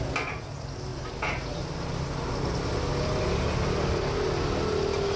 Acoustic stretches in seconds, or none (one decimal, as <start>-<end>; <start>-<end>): 0.0-5.2